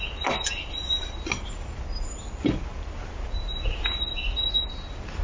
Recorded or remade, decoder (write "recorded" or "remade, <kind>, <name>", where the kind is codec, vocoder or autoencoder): recorded